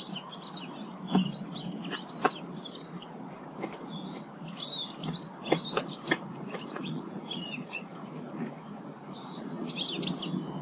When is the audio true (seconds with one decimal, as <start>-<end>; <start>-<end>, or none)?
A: 0.0-6.3; 9.7-10.6